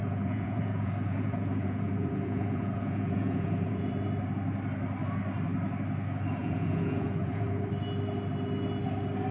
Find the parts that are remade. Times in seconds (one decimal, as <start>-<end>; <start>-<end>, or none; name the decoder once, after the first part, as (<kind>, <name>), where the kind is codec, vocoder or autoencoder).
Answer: 0.0-3.9 (vocoder, Vocos); 6.4-7.7